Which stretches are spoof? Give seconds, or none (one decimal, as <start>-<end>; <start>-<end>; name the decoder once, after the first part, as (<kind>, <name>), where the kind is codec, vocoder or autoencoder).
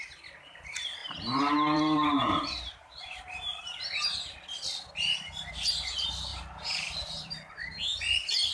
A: 1.0-3.2 (vocoder, BigVGAN v2); 6.3-7.3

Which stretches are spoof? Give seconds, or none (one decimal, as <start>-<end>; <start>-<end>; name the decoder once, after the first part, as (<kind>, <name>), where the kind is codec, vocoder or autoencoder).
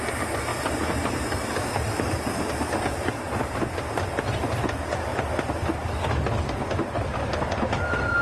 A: 0.5-2.5 (vocoder, BigVGAN v2)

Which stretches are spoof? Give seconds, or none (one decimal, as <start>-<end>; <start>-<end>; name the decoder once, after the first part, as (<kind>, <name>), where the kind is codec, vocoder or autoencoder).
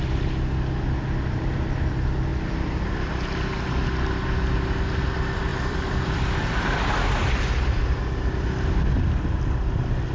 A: 5.5-8.0 (vocoder, BigVGAN v2)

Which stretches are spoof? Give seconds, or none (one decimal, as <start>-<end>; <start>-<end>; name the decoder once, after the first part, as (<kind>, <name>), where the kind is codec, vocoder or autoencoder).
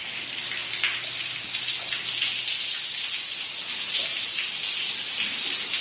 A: 0.9-4.4 (vocoder, BigVGAN v2)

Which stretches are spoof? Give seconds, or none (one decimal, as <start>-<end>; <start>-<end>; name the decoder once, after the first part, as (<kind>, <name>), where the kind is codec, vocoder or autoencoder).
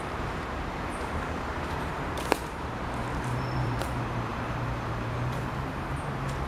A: 0.0-4.3 (vocoder, BigVGAN v2); 4.9-6.5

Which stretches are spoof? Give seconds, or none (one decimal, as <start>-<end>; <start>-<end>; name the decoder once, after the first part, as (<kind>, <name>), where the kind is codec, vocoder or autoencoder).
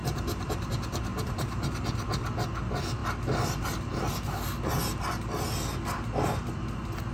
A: 0.0-0.7 (vocoder, BigVGAN v2); 1.1-1.8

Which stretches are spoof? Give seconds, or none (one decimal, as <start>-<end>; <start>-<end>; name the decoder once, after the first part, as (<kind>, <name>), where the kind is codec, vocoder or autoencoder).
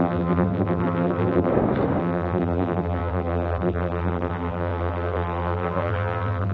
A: 0.0-1.5 (vocoder, BigVGAN v2); 2.0-6.5